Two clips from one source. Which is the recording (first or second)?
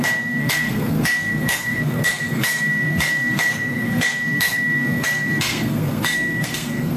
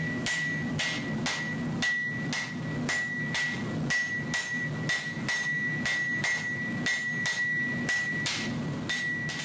second